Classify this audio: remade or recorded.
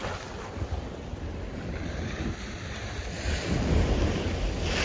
recorded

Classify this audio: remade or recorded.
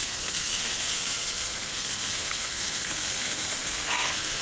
remade